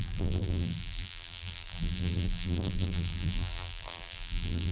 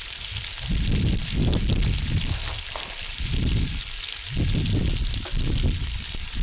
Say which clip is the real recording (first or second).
second